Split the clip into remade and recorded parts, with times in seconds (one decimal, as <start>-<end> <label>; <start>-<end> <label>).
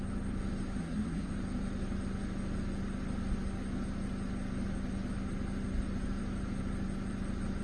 0.0-0.8 recorded; 0.8-1.3 remade; 1.3-7.6 recorded